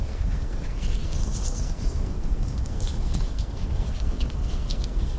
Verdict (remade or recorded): remade